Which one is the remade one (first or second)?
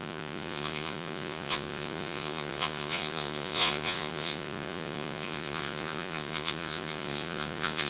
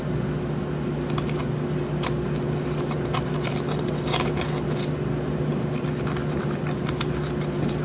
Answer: first